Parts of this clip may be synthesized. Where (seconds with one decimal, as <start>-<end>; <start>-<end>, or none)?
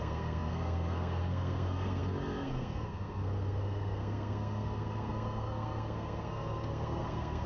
0.0-7.5